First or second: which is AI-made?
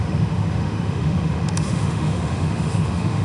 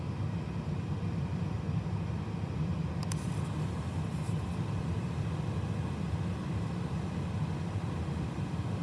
first